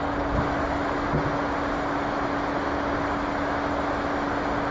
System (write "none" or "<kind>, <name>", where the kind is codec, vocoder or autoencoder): none